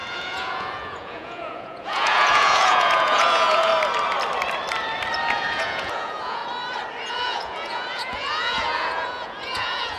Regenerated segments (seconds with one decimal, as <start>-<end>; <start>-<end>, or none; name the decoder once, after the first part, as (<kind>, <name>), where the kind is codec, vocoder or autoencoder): 0.0-3.7 (vocoder, Vocos); 5.3-6.4; 7.1-10.0